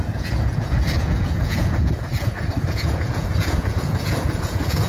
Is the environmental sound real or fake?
fake